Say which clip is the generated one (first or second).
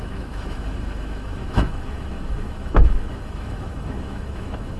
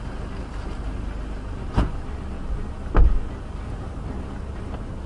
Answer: first